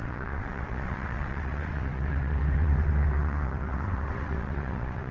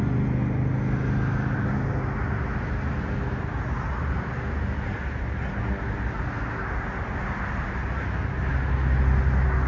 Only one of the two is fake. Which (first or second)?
first